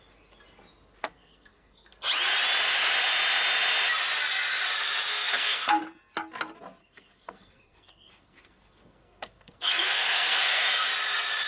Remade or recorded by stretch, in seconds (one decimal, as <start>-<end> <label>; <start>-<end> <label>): 0.0-1.0 recorded; 1.0-1.9 remade; 1.9-5.1 recorded; 5.1-5.8 remade; 5.8-6.8 recorded; 6.8-10.9 remade; 10.9-11.5 recorded